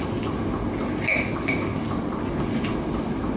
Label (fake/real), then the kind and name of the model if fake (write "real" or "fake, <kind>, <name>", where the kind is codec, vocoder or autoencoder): real